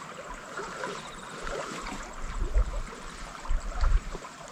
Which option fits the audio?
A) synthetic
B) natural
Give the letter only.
A